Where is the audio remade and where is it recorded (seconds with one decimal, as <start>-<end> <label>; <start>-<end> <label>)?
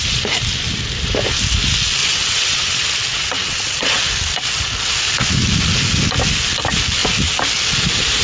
0.0-2.0 recorded; 2.0-2.7 remade; 2.7-3.1 recorded; 3.1-4.0 remade; 4.0-8.2 recorded